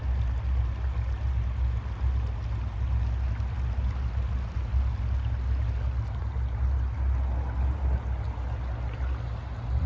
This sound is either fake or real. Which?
real